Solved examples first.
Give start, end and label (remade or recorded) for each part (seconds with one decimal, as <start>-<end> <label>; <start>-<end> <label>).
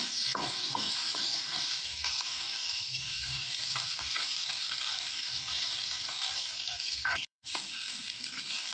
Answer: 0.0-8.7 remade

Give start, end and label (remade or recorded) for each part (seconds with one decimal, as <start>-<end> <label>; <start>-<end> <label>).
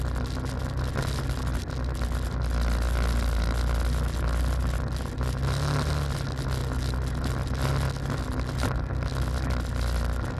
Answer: 0.0-10.4 recorded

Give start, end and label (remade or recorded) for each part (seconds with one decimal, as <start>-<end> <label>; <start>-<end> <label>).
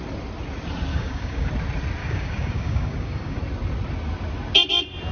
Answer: 0.0-0.9 recorded; 0.9-1.5 remade; 1.5-2.0 recorded; 2.0-3.4 remade; 3.4-5.1 recorded